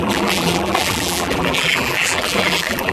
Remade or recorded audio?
remade